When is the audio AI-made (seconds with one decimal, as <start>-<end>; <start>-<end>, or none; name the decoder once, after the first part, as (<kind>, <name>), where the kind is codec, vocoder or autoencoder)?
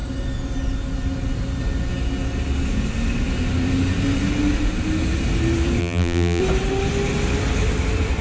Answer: 5.8-6.4 (vocoder, BigVGAN v2)